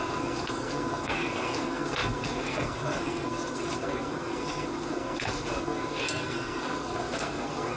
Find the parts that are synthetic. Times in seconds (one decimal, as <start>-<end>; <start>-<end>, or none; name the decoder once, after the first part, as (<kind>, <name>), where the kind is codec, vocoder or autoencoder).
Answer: 0.0-7.8 (codec, SNAC)